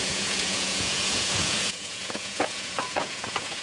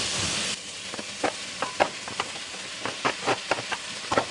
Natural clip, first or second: second